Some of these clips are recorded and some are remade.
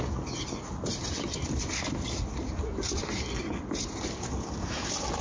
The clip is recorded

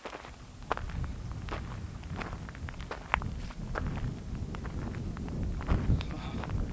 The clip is recorded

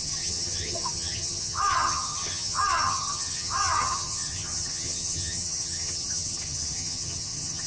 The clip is remade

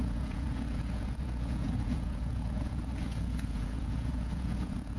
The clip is remade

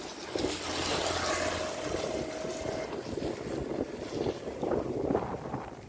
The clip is recorded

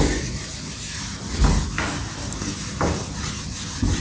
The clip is recorded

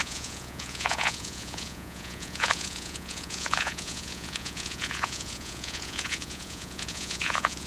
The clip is remade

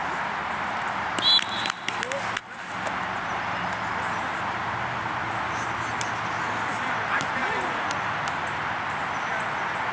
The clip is recorded